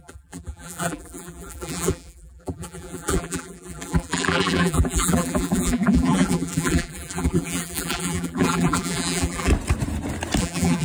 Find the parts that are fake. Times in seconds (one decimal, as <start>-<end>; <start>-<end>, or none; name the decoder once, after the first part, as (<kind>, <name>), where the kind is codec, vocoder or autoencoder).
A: 0.0-9.5 (vocoder, BigVGAN v2); 10.4-10.8